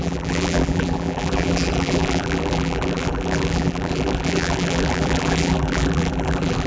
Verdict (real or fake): fake